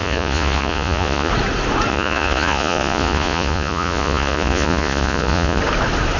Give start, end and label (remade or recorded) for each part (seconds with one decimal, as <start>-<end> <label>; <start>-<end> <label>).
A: 0.0-1.3 remade; 1.3-1.9 recorded; 1.9-5.6 remade; 5.6-6.2 recorded